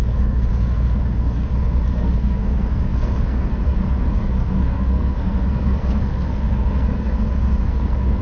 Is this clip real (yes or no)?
no